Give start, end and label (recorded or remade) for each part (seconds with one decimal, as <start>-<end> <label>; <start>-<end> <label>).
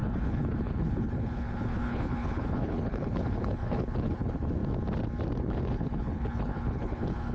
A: 0.0-4.6 remade; 4.6-5.4 recorded; 5.4-7.3 remade